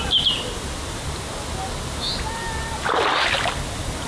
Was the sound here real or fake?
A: real